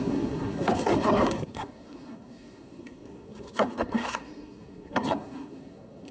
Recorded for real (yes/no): no